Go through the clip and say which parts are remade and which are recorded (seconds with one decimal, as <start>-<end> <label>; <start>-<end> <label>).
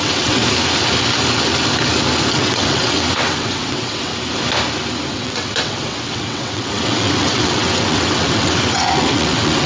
0.0-0.4 remade; 0.4-2.3 recorded; 2.3-4.1 remade; 4.1-5.1 recorded; 5.1-9.7 remade